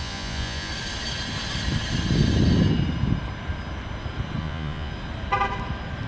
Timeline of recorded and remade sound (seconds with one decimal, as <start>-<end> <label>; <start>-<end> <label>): 0.0-0.7 remade; 0.7-4.4 recorded; 4.4-4.9 remade; 4.9-6.1 recorded